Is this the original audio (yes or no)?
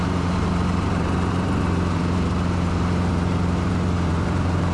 no